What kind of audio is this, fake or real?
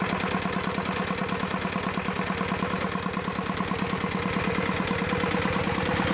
real